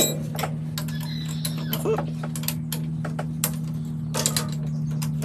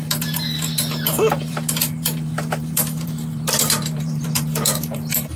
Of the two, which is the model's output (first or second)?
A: second